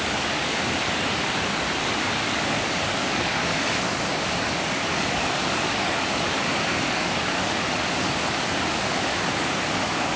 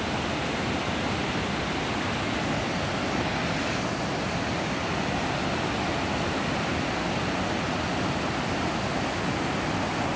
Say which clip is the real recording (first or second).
second